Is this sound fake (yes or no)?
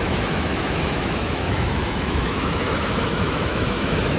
yes